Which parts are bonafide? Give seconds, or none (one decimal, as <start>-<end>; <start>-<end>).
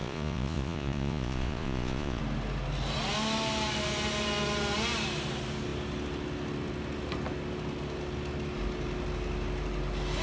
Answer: 2.2-10.2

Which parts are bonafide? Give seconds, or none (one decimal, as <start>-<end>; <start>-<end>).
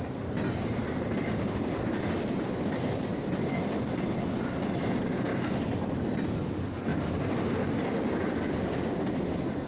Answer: 5.3-6.5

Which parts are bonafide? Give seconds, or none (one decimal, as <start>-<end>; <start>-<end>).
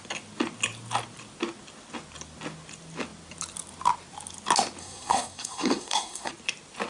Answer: 0.0-4.8; 6.3-6.9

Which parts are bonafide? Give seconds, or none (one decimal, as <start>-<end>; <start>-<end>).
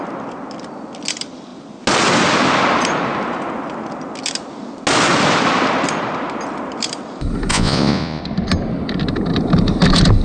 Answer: 0.0-7.5; 8.2-10.2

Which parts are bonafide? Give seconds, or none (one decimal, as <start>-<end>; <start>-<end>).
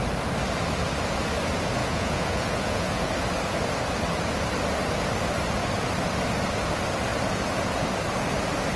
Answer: 0.0-1.8; 3.1-8.8